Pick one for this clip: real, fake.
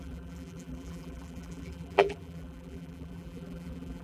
fake